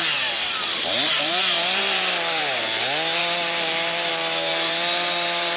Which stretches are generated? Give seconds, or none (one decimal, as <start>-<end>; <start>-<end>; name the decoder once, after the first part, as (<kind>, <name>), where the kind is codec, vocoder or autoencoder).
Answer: 0.0-2.4 (vocoder, BigVGAN v2); 3.2-4.1; 4.5-5.6